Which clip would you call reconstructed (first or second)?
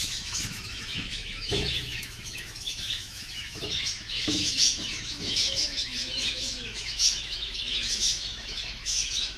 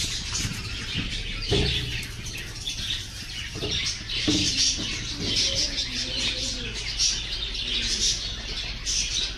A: first